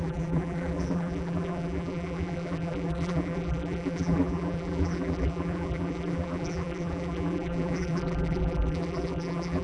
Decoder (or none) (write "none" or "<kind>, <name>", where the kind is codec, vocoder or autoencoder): vocoder, BigVGAN v2